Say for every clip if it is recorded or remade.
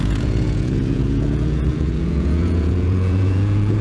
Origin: remade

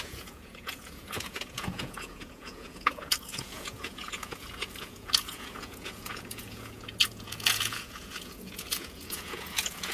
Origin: remade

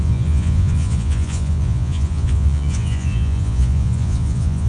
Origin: remade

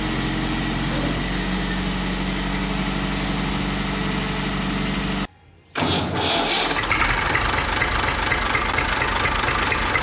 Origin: recorded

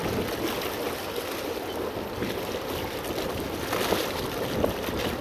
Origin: recorded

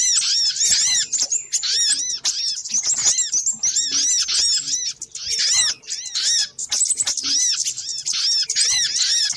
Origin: recorded